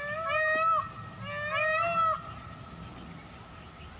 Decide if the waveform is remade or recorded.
recorded